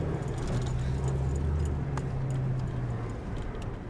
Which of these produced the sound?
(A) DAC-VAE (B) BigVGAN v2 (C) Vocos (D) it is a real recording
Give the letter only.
D